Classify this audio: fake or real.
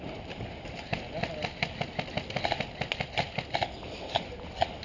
real